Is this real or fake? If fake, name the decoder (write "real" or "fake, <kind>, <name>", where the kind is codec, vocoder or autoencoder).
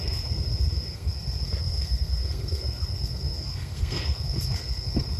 fake, codec, SNAC